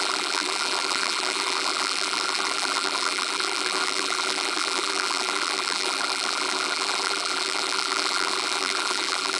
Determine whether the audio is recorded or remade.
remade